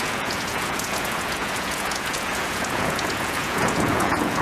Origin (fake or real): fake